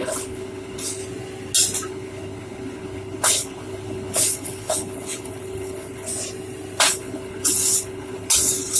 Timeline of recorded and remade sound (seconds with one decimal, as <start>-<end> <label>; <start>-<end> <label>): 0.0-1.0 remade; 1.0-1.9 recorded; 1.9-6.1 remade; 6.1-6.9 recorded; 6.9-8.8 remade